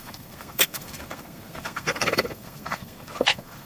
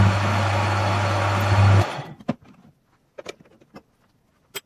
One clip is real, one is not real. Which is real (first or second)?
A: second